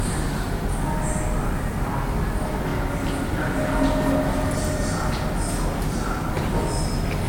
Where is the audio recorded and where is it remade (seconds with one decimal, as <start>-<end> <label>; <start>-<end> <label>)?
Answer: 0.0-7.3 recorded